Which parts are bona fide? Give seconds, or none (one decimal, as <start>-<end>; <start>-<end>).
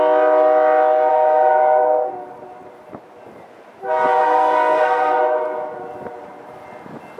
0.0-1.1; 2.1-4.2; 5.2-7.2